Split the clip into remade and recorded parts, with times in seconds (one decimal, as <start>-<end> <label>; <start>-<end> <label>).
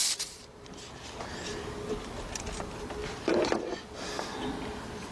0.0-0.9 remade; 0.9-5.1 recorded